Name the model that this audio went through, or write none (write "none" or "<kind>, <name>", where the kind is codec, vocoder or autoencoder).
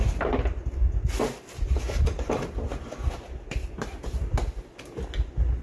none